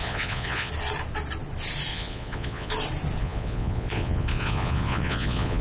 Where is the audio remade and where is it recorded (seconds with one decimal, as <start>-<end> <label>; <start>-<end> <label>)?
0.0-0.7 remade; 0.7-1.9 recorded; 1.9-2.7 remade; 2.7-3.2 recorded; 3.2-5.6 remade